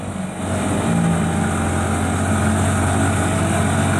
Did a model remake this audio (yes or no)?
no